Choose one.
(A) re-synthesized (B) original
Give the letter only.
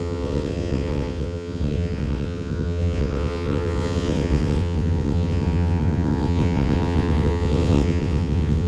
A